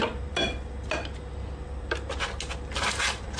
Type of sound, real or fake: real